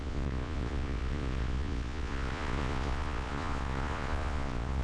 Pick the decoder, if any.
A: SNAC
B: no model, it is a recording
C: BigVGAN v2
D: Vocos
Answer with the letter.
D